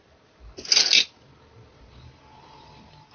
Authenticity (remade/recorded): recorded